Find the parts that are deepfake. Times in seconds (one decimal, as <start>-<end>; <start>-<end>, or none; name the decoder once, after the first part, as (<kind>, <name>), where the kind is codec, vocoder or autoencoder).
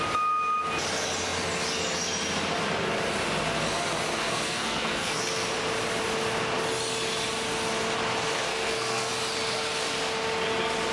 4.2-5.2 (codec, SNAC); 8.5-9.1